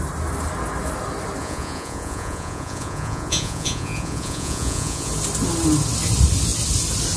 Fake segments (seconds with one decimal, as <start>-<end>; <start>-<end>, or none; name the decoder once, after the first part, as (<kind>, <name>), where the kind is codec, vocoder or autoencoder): 1.4-5.1 (vocoder, Vocos)